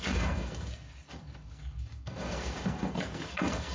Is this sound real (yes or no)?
no